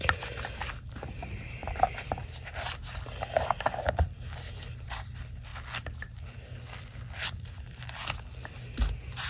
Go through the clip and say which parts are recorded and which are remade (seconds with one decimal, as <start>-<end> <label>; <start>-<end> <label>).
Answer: 0.0-1.6 recorded; 1.6-2.1 remade; 2.1-5.5 recorded; 5.5-6.1 remade; 6.1-9.3 recorded